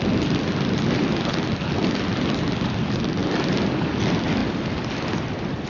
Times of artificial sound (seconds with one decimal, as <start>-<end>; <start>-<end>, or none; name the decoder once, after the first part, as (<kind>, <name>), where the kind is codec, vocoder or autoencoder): none